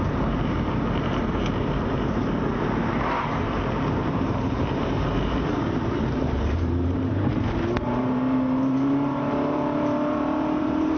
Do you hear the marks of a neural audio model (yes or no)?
yes